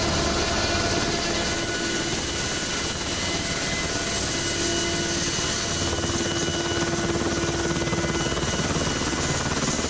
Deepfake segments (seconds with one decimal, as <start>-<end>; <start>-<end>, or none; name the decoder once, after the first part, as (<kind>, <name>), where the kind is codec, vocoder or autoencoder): none